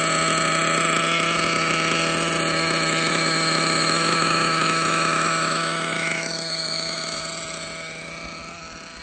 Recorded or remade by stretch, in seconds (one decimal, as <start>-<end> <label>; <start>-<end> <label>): 0.0-3.1 recorded; 3.1-7.2 remade; 7.2-9.0 recorded

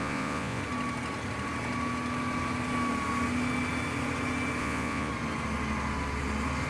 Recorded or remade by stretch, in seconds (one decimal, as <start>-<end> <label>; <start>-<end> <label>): 0.0-0.6 remade; 0.6-4.6 recorded; 4.6-5.1 remade; 5.1-6.7 recorded

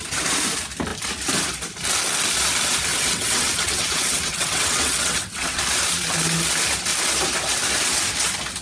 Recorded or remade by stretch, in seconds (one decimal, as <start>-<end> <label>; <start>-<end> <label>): 0.0-2.9 recorded; 2.9-5.6 remade; 5.6-8.6 recorded

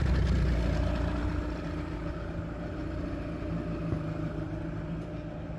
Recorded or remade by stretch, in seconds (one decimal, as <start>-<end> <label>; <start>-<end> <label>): 0.0-5.6 recorded